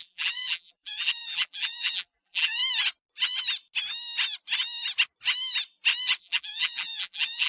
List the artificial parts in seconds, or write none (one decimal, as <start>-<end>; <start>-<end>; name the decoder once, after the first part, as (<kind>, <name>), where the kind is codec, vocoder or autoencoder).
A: 0.0-2.6 (vocoder, BigVGAN v2); 6.2-7.5